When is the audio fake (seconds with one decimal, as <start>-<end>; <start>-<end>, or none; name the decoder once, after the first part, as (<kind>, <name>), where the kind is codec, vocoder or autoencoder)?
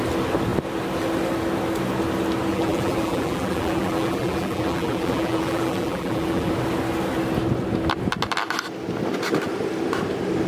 2.5-6.5 (vocoder, BigVGAN v2)